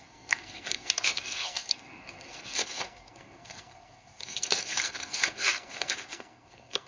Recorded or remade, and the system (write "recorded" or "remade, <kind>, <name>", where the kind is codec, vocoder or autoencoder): remade, codec, SNAC